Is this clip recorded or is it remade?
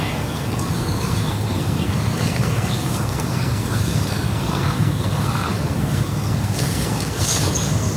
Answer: remade